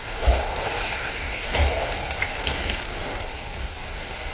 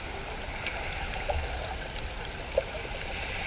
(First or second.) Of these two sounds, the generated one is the first